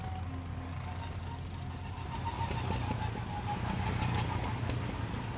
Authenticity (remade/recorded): recorded